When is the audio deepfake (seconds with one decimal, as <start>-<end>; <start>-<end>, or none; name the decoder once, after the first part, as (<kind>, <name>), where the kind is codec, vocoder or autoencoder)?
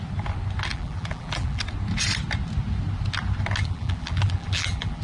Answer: 0.7-1.6 (vocoder, BigVGAN v2); 3.6-5.0